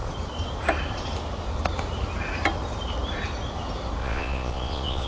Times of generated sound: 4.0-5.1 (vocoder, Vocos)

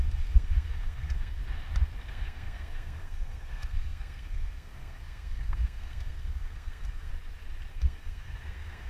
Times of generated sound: 0.0-1.4 (codec, SNAC); 2.1-7.1; 7.7-8.9